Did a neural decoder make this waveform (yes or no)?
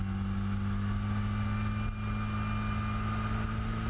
no